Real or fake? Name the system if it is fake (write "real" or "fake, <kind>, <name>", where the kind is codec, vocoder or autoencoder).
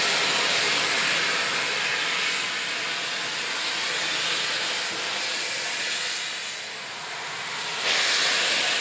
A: real